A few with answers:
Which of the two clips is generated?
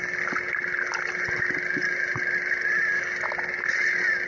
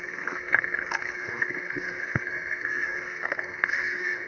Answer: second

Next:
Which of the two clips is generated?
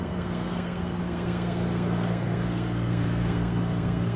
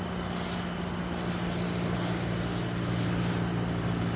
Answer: first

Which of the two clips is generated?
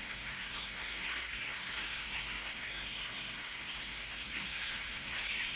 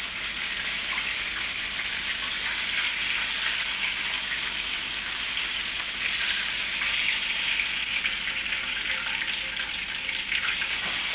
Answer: first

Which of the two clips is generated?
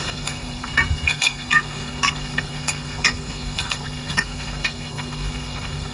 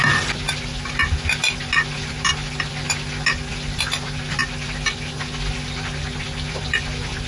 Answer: first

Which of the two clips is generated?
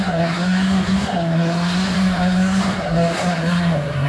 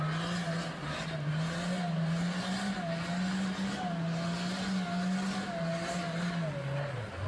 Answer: first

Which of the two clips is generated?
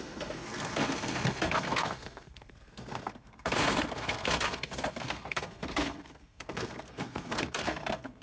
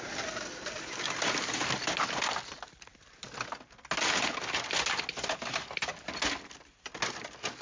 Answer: first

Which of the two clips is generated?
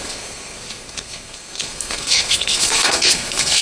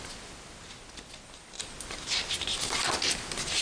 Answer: first